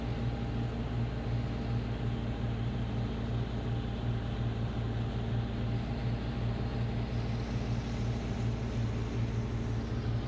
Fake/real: real